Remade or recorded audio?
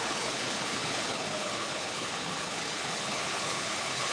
remade